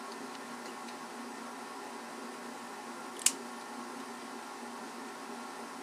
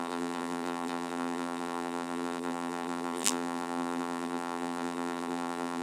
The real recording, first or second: first